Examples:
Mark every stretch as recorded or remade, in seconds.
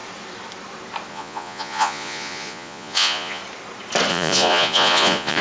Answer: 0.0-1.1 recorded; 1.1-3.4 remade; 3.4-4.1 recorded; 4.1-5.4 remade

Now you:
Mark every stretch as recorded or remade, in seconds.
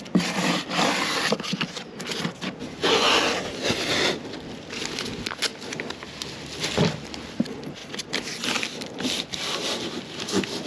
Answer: 0.0-2.6 recorded; 2.6-3.1 remade; 3.1-10.7 recorded